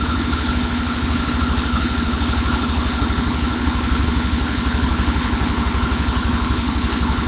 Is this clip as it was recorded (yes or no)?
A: no